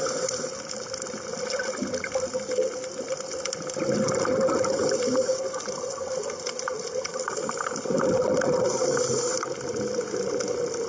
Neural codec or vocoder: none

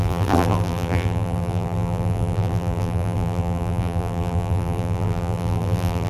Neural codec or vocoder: vocoder, BigVGAN v2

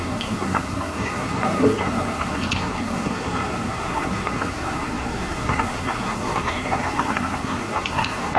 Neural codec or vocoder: codec, SNAC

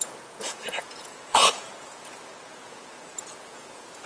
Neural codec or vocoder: vocoder, Vocos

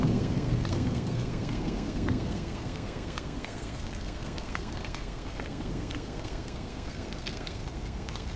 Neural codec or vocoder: codec, SNAC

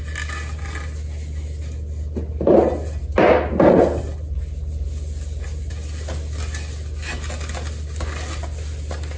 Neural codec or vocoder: none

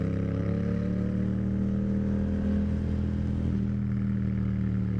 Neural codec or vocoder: none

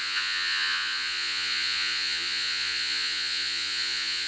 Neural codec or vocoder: vocoder, Vocos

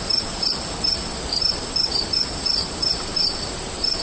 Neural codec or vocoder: none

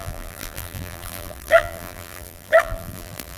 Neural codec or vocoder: vocoder, BigVGAN v2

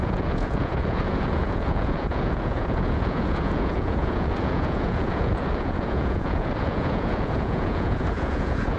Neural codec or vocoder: vocoder, Vocos